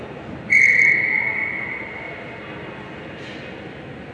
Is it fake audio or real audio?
real